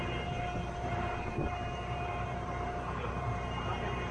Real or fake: fake